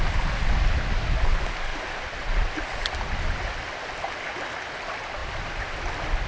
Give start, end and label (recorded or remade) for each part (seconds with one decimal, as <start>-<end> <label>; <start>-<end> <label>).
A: 0.0-6.3 recorded